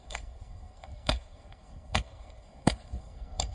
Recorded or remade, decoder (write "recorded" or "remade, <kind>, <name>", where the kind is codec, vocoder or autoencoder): remade, codec, SNAC